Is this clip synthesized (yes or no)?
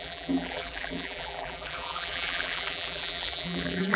yes